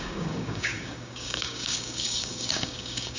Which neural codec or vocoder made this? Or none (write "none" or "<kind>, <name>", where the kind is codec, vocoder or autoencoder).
codec, DAC